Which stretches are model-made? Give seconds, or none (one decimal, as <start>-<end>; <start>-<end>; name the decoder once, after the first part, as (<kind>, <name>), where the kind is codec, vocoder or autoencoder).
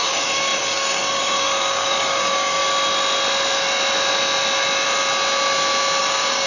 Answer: 0.0-2.6 (codec, DAC); 6.0-6.5